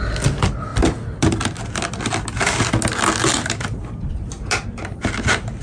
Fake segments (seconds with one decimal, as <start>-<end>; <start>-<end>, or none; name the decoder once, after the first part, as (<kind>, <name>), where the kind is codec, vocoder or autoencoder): none